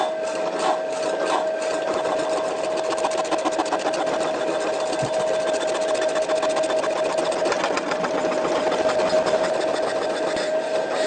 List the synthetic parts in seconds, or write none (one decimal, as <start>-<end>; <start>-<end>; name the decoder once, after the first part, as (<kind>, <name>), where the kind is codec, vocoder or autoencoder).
none